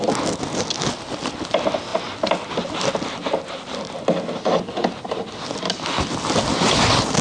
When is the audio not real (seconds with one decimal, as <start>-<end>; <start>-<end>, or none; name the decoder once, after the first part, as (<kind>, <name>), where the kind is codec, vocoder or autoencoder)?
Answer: none